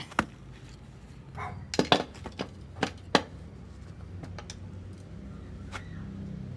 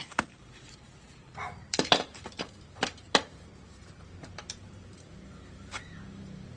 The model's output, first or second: second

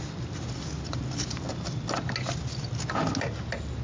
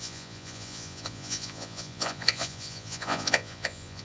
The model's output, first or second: second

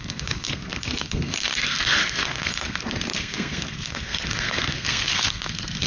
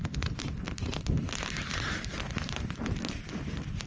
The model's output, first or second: first